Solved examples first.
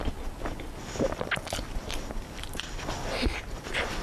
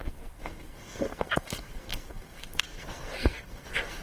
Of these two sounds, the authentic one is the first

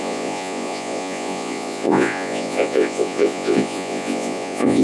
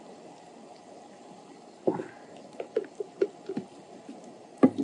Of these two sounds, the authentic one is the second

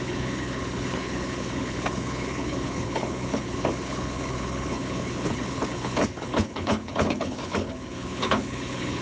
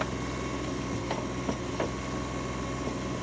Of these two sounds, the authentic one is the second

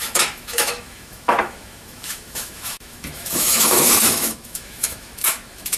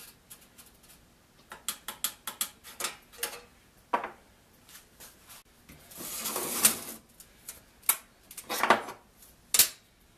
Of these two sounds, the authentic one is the second